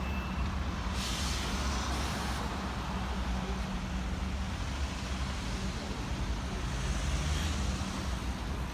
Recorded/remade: recorded